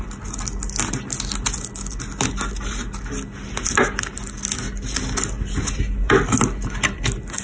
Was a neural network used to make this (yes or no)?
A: no